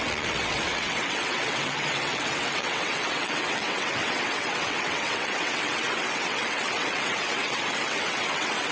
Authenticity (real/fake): fake